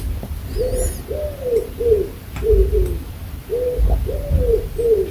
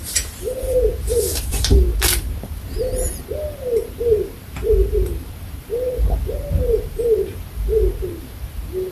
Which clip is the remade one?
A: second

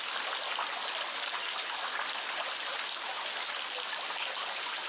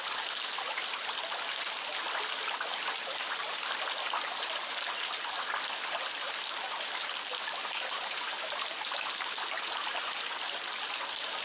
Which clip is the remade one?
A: second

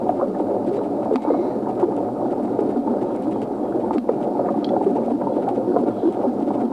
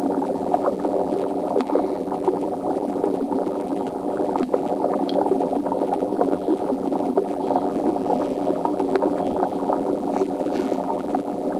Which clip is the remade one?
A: second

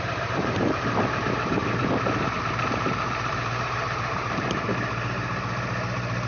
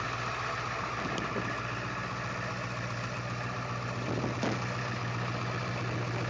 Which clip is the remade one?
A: first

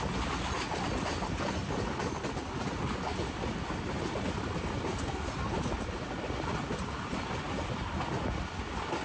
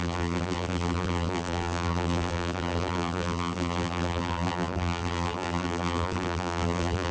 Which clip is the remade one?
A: second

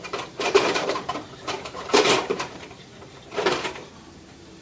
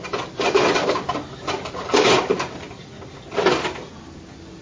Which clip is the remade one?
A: first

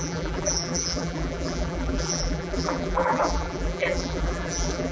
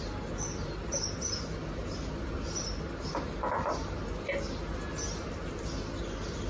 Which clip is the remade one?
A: first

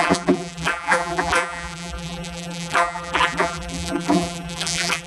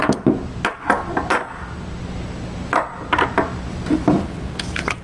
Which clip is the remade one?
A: first